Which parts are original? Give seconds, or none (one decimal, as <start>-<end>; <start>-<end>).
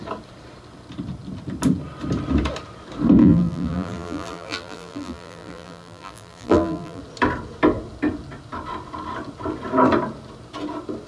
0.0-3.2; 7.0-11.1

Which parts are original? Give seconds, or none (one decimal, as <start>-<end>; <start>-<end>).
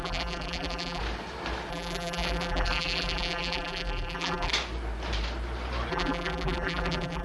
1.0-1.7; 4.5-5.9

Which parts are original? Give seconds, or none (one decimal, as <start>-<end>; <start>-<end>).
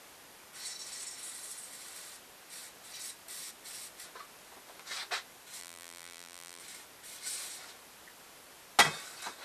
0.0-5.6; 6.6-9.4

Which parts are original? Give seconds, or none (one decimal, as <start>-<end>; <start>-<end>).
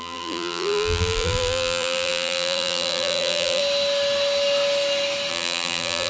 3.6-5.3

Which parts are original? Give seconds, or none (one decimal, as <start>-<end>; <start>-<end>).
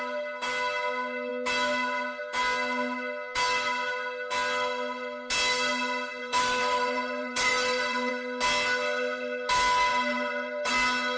0.0-6.2; 8.1-9.9; 10.7-11.2